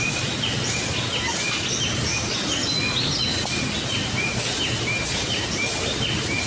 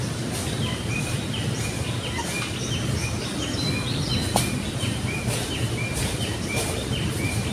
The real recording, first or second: first